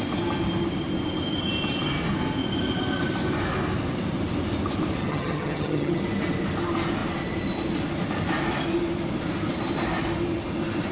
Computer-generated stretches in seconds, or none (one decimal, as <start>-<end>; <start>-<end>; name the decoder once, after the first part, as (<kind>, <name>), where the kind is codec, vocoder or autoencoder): 5.0-6.0 (vocoder, HiFi-GAN)